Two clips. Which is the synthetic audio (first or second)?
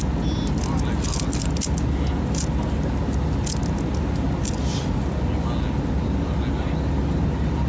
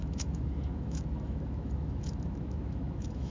second